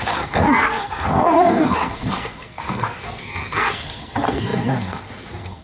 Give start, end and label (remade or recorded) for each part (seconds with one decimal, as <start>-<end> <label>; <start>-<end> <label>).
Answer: 0.0-5.6 remade